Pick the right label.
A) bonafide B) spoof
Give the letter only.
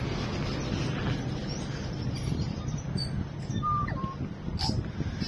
A